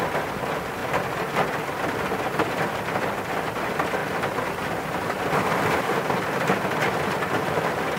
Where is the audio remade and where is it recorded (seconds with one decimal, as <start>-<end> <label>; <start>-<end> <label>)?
0.0-8.0 recorded